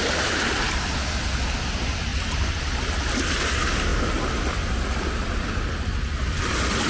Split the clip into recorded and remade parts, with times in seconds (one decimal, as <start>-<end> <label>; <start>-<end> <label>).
0.0-6.9 recorded

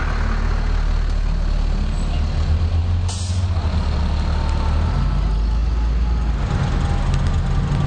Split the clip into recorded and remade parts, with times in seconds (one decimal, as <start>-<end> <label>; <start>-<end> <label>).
0.0-7.9 recorded

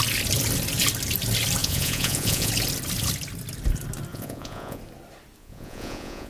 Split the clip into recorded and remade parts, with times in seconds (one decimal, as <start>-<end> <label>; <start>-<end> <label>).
0.0-1.6 recorded; 1.6-2.5 remade; 2.5-4.1 recorded; 4.1-4.8 remade; 4.8-5.4 recorded; 5.4-6.3 remade

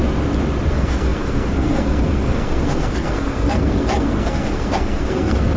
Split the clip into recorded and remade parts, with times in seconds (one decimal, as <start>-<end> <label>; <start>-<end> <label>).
0.0-0.7 recorded; 0.7-5.6 remade

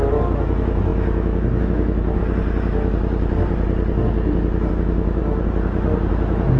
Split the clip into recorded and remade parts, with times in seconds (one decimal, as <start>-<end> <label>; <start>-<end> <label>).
0.0-2.2 remade; 2.2-4.7 recorded; 4.7-5.2 remade; 5.2-6.1 recorded; 6.1-6.6 remade

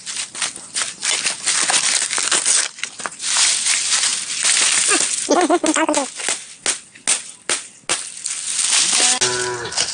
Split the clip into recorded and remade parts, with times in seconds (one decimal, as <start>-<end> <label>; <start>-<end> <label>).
0.0-9.9 recorded

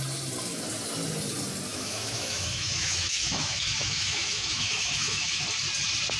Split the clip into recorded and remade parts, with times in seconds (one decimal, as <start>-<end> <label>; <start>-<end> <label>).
0.0-1.7 recorded; 1.7-5.4 remade; 5.4-6.2 recorded